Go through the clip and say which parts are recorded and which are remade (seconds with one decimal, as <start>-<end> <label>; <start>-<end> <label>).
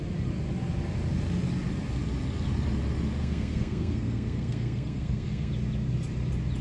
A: 0.0-3.2 recorded; 3.2-5.5 remade; 5.5-6.6 recorded